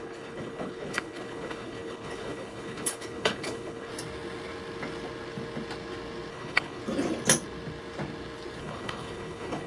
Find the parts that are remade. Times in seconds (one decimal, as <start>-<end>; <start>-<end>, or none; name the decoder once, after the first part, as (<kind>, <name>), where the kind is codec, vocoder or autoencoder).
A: 0.0-3.9 (codec, HILCodec); 6.3-6.8; 8.6-9.7